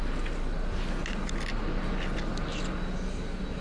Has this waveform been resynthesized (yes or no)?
no